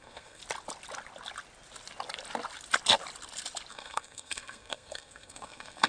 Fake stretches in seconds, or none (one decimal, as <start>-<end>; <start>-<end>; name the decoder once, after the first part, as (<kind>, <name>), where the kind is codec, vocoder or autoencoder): 0.0-0.4 (codec, SNAC); 3.7-5.9